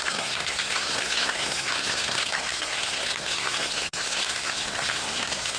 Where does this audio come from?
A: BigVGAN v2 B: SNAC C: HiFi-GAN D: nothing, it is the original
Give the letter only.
B